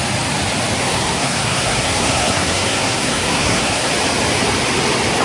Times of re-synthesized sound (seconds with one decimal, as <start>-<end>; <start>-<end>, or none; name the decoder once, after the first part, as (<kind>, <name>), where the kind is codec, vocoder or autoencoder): 0.8-3.9 (codec, SNAC)

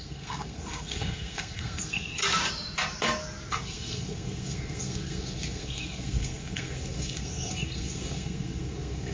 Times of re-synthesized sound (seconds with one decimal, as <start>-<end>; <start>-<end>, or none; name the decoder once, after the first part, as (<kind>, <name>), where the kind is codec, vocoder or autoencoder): 0.0-2.2 (codec, SNAC); 3.5-9.1

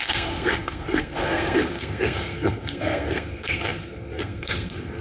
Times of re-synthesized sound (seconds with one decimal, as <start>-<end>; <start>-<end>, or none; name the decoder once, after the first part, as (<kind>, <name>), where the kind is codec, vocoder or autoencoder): 0.0-5.0 (codec, SNAC)

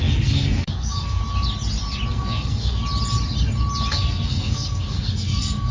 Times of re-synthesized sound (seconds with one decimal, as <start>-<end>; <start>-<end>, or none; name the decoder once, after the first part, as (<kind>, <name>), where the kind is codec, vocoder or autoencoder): 0.0-1.2 (codec, SNAC); 2.1-2.8; 3.9-5.7

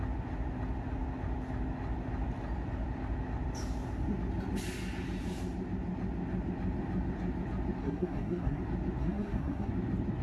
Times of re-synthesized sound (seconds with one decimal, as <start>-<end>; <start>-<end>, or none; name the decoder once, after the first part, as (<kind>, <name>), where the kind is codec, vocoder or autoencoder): 7.8-8.6 (codec, SNAC); 9.0-9.7

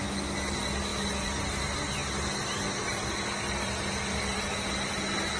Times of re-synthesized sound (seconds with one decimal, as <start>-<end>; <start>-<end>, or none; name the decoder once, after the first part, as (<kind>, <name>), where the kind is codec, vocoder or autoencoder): none

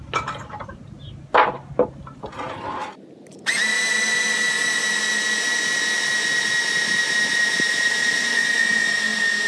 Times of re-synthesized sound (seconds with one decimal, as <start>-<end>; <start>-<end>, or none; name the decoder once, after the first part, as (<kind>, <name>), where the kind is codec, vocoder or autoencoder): none

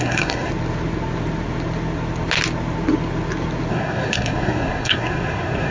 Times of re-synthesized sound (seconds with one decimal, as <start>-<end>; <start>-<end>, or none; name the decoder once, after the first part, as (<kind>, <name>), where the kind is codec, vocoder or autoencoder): 0.0-0.5 (codec, SNAC); 3.7-5.7